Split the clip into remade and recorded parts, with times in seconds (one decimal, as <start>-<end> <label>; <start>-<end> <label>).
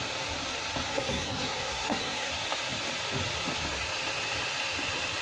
0.0-0.9 recorded; 0.9-2.3 remade; 2.3-5.2 recorded